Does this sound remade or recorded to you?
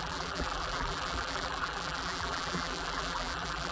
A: remade